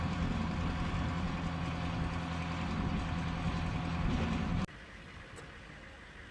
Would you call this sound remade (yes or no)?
no